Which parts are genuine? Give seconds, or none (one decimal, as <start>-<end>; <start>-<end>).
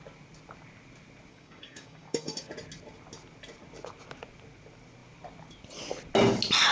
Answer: 0.0-1.3; 2.5-6.7